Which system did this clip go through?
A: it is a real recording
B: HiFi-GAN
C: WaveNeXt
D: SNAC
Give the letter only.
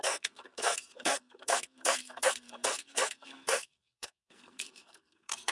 D